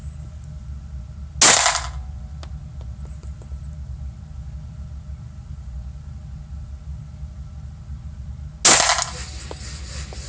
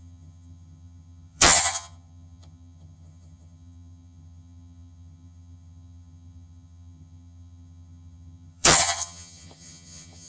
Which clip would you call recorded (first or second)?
first